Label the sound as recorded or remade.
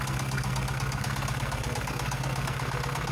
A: remade